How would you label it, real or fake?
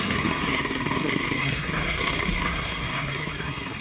fake